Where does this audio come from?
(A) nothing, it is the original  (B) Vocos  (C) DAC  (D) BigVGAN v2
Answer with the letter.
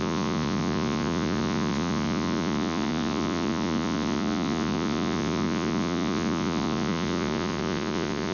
B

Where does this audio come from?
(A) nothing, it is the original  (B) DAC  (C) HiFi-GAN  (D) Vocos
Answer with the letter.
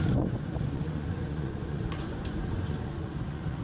D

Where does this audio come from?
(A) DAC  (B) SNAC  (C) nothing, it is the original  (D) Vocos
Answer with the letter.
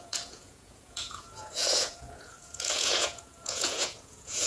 D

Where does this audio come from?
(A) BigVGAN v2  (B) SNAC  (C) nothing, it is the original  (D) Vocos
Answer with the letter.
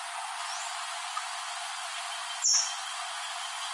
D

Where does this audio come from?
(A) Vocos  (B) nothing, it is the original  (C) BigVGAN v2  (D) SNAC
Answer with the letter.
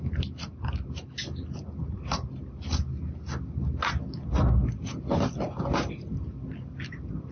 B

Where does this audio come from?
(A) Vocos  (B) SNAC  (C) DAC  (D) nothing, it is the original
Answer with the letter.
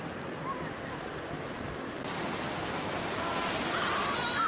D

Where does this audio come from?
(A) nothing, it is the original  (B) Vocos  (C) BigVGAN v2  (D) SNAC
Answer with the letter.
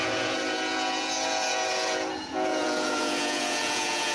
B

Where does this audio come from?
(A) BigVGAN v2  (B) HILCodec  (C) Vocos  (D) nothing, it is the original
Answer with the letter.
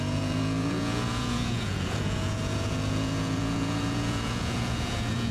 C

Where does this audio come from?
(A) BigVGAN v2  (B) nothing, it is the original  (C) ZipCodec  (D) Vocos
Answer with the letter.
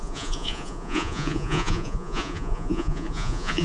D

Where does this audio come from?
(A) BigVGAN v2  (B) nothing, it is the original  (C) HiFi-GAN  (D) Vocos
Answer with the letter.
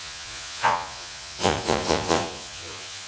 D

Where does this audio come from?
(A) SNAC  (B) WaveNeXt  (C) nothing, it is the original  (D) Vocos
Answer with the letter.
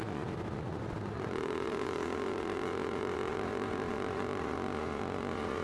D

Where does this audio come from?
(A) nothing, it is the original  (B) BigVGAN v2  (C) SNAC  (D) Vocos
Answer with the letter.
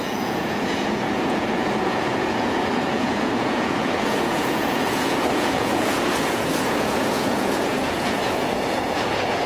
D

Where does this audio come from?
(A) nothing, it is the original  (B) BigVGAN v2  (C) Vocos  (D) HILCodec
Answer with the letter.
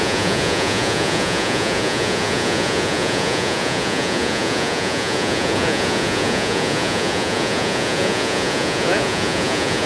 C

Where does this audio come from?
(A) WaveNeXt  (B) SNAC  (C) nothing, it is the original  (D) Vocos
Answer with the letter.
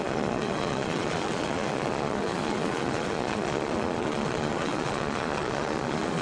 D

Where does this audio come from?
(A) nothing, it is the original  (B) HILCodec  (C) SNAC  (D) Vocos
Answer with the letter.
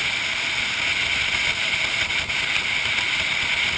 A